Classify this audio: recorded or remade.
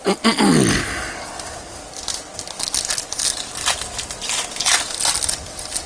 recorded